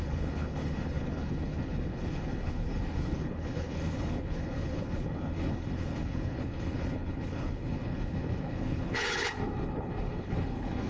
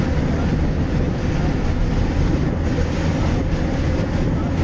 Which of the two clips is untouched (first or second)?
second